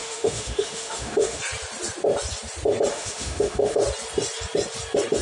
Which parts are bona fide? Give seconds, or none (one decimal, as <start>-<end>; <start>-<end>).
1.4-2.9; 3.8-5.2